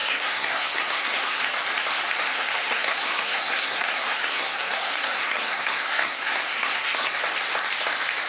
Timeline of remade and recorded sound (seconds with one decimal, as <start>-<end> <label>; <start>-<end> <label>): 0.0-1.4 remade; 1.4-2.3 recorded; 2.3-7.2 remade; 7.2-8.3 recorded